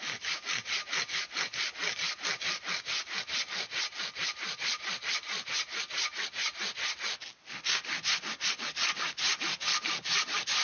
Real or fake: real